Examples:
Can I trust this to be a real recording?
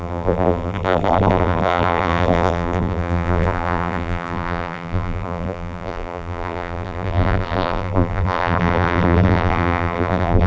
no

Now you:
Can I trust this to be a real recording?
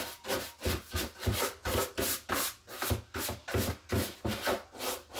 yes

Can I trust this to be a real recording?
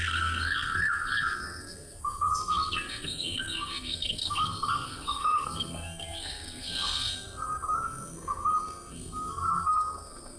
no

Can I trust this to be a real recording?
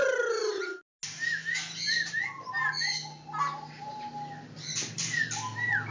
yes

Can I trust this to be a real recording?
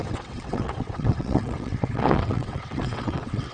no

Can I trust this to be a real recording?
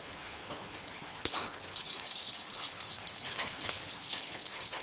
no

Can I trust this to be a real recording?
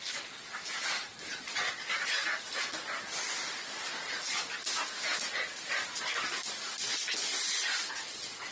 yes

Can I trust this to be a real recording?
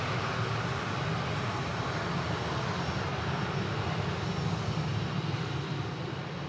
yes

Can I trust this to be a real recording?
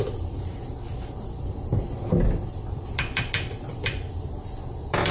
no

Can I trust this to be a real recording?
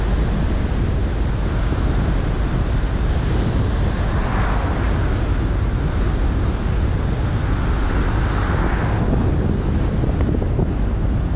yes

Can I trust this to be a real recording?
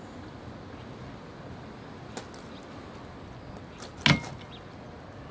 yes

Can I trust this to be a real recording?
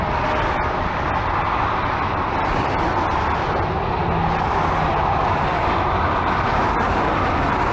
yes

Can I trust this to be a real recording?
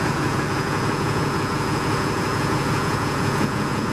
no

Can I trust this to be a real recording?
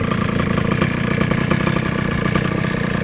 yes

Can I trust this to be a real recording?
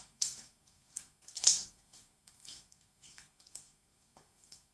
no